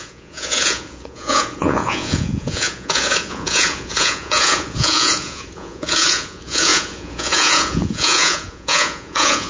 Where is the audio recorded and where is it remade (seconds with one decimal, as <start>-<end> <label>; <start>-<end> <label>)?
0.0-9.5 remade